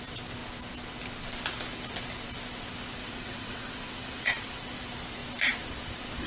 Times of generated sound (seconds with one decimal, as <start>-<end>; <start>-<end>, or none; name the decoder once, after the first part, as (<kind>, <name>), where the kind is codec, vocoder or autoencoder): 3.0-4.6 (vocoder, WaveNeXt)